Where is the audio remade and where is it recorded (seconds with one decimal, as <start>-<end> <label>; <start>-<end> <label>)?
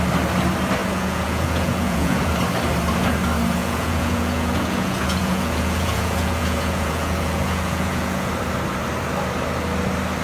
0.0-0.8 recorded; 0.8-2.3 remade; 2.3-3.6 recorded; 3.6-8.3 remade; 8.3-10.2 recorded